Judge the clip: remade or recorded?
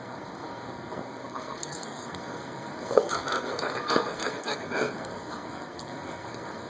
remade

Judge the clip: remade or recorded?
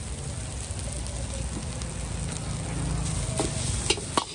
recorded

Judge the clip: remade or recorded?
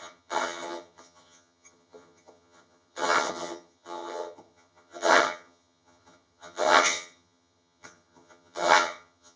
remade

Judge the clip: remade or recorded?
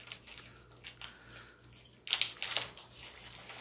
recorded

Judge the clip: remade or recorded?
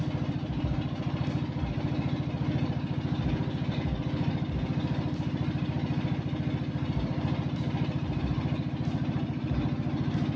recorded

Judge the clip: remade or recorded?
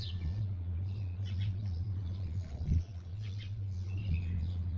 remade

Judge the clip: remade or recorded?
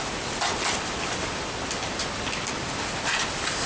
remade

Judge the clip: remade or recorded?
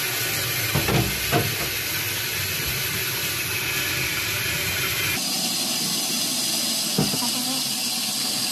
recorded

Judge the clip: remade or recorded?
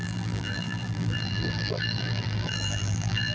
remade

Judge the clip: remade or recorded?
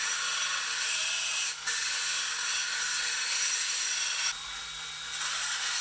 recorded